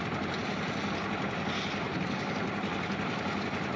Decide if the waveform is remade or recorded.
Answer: recorded